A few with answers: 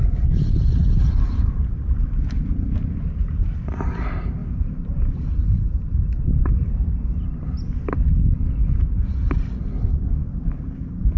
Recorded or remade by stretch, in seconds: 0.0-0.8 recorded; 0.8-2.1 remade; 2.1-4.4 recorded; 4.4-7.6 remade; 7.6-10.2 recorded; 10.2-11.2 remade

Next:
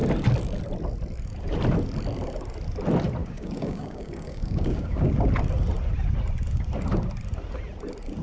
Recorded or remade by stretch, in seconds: 0.0-3.2 recorded; 3.2-5.1 remade; 5.1-8.2 recorded

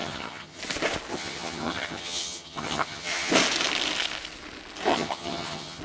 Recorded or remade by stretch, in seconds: 0.0-0.6 remade; 0.6-1.1 recorded; 1.1-3.3 remade; 3.3-4.9 recorded; 4.9-5.8 remade

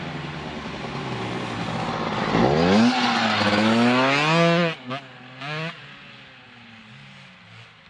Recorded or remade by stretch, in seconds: 0.0-7.9 recorded

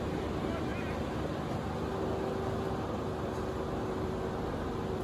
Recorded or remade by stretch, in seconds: 0.0-5.0 recorded